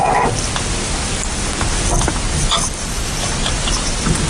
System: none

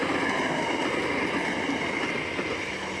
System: none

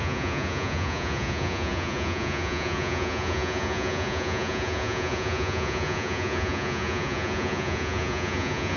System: vocoder, Vocos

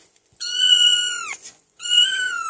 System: vocoder, Vocos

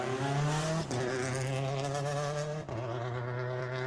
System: none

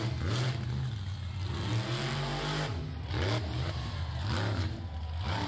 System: none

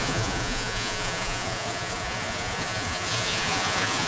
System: vocoder, Vocos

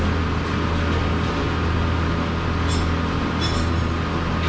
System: none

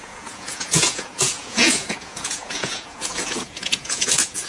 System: vocoder, Vocos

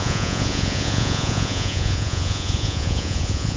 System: vocoder, Vocos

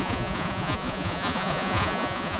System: vocoder, Vocos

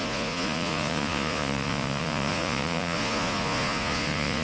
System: vocoder, Vocos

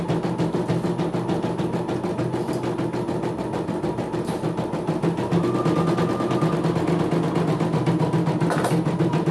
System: none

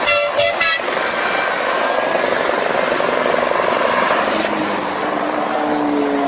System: none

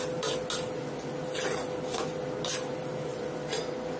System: none